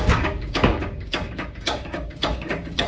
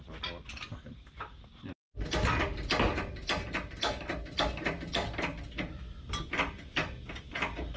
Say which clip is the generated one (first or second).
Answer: first